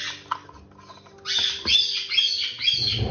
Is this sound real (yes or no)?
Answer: yes